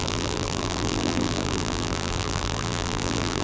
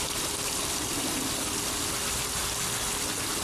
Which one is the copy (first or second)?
first